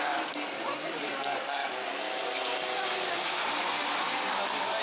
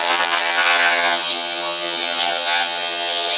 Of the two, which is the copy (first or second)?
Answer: second